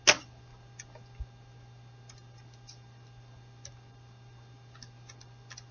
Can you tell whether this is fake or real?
real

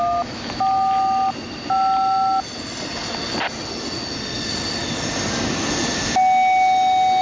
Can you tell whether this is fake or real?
real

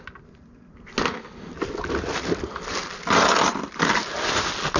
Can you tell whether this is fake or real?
real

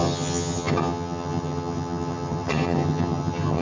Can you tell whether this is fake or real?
fake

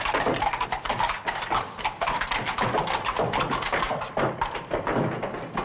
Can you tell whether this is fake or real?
real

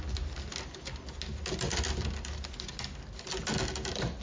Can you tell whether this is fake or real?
real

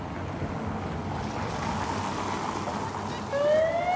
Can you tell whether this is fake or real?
real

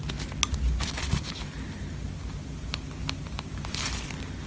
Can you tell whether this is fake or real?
real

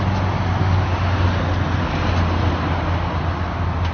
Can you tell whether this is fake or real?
real